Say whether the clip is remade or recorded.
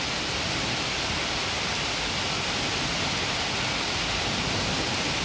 recorded